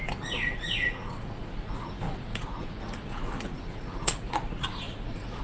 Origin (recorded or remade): remade